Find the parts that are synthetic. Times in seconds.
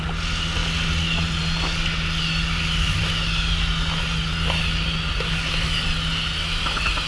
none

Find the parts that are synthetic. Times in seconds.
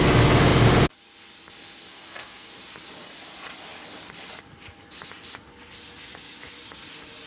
1.9-2.5 (codec, SNAC)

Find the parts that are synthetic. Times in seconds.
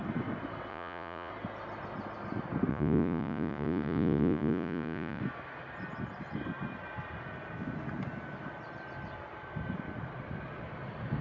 0.7-1.3 (vocoder, Vocos); 2.7-5.2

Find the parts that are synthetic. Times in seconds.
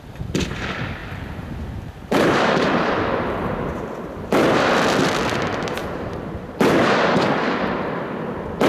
1.0-3.8 (vocoder, BigVGAN v2); 5.8-6.5